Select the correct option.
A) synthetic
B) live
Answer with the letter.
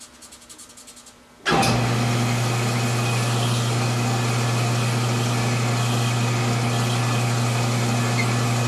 B